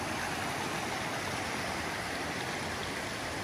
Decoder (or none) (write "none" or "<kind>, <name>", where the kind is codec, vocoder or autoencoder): none